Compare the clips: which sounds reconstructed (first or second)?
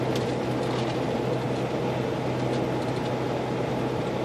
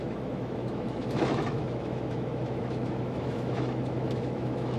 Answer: second